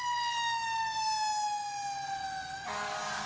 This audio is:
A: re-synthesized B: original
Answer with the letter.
B